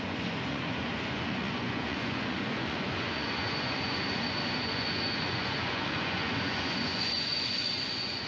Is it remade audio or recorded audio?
remade